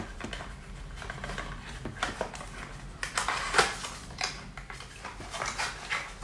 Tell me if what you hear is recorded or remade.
recorded